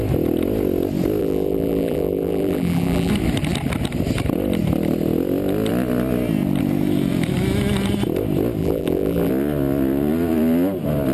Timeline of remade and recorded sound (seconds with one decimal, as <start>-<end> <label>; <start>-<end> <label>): 0.0-1.2 recorded; 1.2-3.1 remade; 3.1-8.6 recorded; 8.6-9.3 remade; 9.3-11.1 recorded